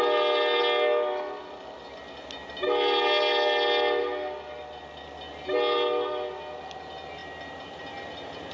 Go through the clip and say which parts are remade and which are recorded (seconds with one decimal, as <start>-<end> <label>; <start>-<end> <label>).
0.0-8.5 recorded